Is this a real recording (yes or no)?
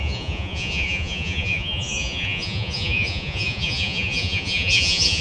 no